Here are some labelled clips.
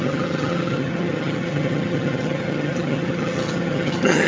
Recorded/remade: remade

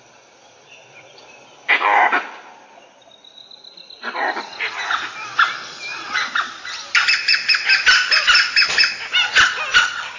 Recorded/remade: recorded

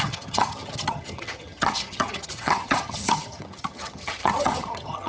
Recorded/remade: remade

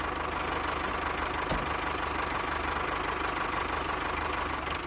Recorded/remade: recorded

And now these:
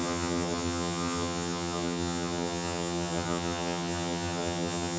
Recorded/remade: remade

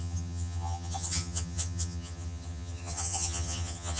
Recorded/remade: remade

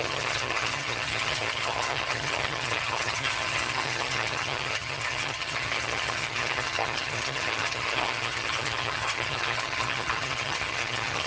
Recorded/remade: remade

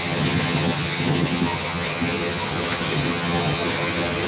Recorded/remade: remade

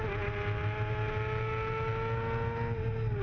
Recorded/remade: recorded